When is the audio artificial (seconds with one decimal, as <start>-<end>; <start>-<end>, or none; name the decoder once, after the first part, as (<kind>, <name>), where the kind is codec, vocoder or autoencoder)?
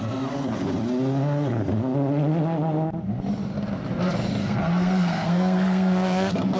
4.4-6.6 (codec, SNAC)